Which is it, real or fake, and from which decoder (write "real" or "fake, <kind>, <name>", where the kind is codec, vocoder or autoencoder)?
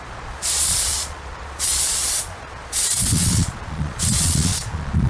fake, vocoder, Vocos